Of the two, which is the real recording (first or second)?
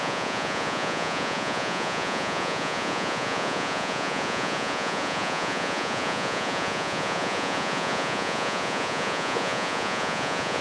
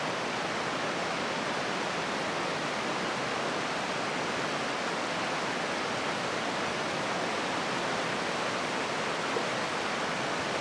second